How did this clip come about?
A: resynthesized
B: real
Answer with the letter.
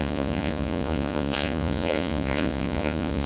A